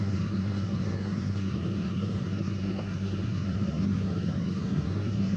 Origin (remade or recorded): remade